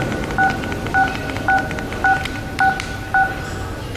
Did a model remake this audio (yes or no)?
no